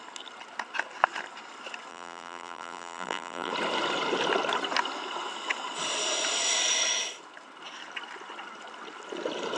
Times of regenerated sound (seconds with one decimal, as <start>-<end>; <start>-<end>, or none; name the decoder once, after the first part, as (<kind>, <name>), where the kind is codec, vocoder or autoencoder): 1.9-3.5 (vocoder, BigVGAN v2)